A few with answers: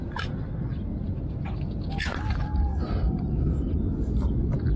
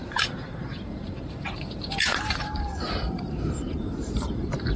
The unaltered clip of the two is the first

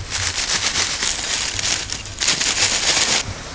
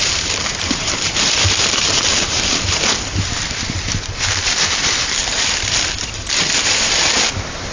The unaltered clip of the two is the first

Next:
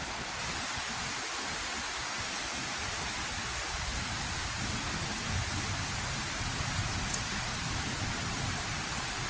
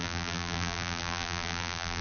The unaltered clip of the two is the first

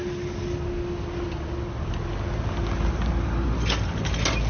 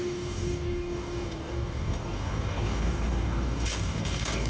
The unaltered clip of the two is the first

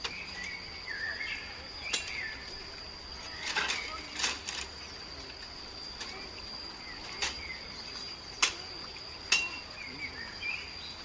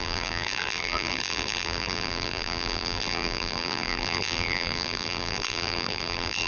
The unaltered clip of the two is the first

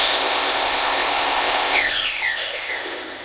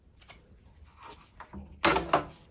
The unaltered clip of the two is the second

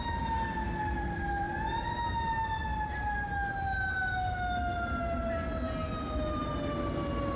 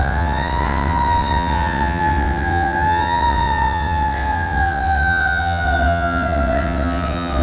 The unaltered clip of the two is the first